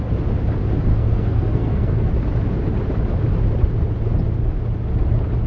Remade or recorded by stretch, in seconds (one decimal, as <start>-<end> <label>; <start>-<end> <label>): 0.0-0.9 recorded; 0.9-2.1 remade; 2.1-5.5 recorded